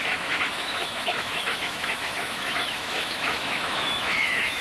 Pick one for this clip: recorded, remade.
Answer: remade